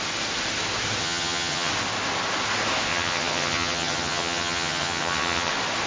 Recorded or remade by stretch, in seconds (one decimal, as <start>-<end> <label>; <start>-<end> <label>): 0.0-1.0 recorded; 1.0-1.7 remade; 1.7-2.9 recorded; 2.9-5.5 remade; 5.5-5.9 recorded